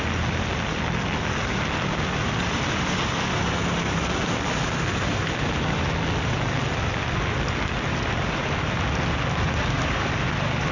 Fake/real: real